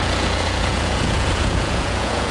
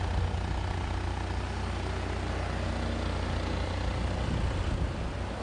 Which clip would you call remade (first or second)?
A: first